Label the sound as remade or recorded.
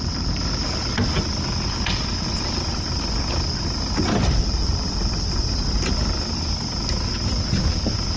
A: recorded